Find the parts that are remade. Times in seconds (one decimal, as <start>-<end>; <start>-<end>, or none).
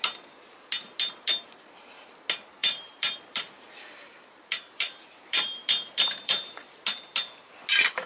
2.6-6.8